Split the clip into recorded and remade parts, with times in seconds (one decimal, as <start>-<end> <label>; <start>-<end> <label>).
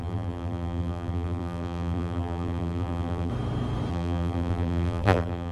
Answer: 0.0-3.3 remade; 3.3-3.9 recorded; 3.9-5.5 remade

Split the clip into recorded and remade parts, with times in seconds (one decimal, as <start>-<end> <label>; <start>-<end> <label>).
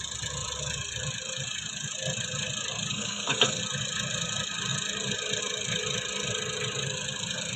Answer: 0.0-2.9 recorded; 2.9-3.6 remade; 3.6-7.6 recorded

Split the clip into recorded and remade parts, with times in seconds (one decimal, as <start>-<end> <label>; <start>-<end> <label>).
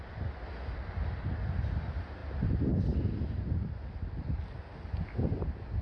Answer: 0.0-5.8 recorded